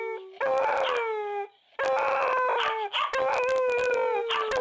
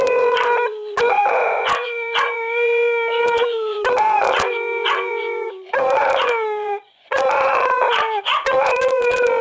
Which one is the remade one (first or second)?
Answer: second